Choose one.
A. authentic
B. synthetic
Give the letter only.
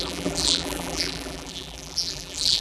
B